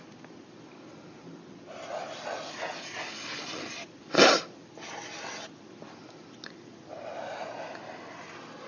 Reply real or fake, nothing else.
real